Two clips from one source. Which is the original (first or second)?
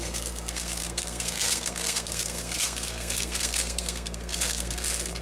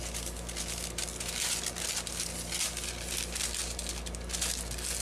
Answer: second